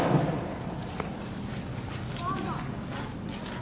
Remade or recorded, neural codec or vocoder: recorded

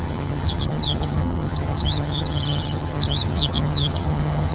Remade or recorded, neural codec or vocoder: remade, vocoder, HiFi-GAN